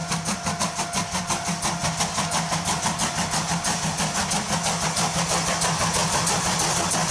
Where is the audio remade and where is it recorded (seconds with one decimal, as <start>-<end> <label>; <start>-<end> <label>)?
0.0-7.1 recorded